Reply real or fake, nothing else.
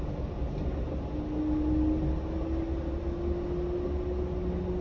real